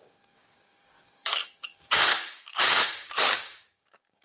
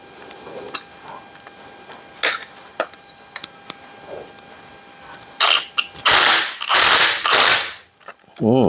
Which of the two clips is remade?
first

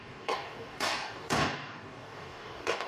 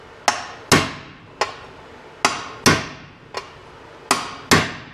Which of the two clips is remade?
first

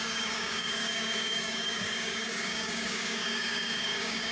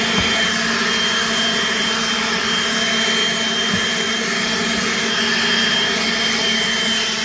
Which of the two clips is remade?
first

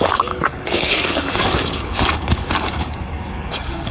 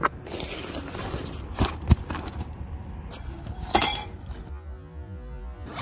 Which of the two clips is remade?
first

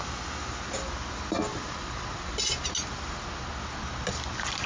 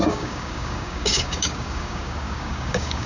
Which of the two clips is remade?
second